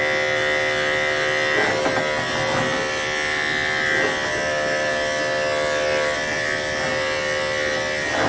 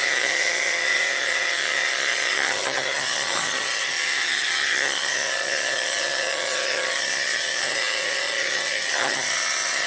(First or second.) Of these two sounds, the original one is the first